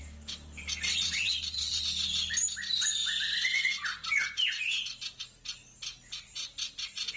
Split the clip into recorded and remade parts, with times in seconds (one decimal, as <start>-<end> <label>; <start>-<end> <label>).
0.0-0.9 recorded; 0.9-1.8 remade; 1.8-7.2 recorded